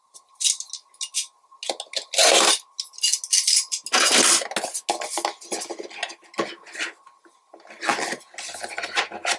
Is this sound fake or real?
real